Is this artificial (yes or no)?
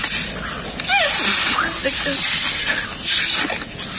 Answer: no